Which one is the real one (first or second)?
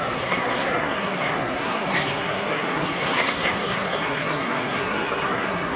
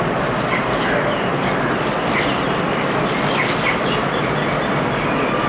second